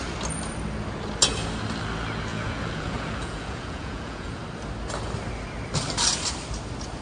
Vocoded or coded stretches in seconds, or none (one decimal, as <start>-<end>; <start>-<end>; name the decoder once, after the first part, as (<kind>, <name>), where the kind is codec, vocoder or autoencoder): 2.3-4.4 (vocoder, Vocos)